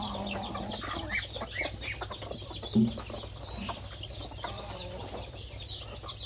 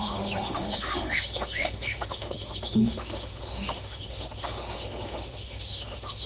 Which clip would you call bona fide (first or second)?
first